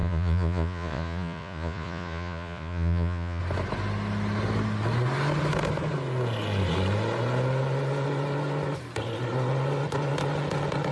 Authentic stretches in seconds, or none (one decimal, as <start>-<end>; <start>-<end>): 3.4-10.9